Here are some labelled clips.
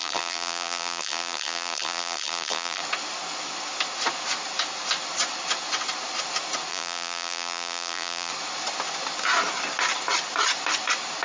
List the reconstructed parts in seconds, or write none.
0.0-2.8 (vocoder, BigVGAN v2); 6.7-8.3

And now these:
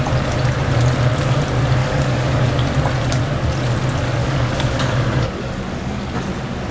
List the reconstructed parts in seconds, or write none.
1.8-2.4 (codec, DAC); 4.2-6.2

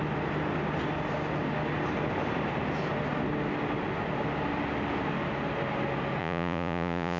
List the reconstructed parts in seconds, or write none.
6.2-7.2 (vocoder, Vocos)

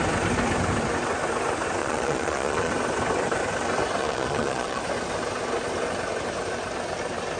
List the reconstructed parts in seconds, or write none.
1.8-2.7 (vocoder, Vocos); 4.0-4.8

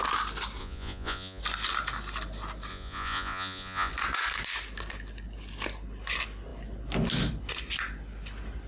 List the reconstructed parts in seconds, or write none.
0.6-1.4 (vocoder, Vocos); 2.7-3.9